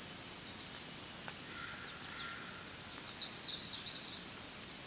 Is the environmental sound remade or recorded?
recorded